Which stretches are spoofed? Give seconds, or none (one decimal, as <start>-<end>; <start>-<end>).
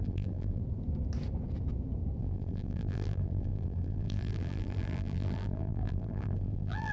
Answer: 0.0-0.6; 2.2-6.9